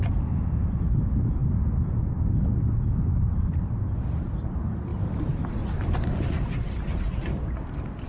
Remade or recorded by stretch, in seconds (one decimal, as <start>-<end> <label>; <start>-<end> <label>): 0.0-8.1 recorded